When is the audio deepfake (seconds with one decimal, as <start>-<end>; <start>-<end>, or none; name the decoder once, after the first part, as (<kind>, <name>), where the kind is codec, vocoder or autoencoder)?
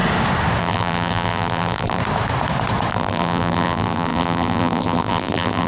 0.6-2.0 (vocoder, BigVGAN v2); 2.9-5.7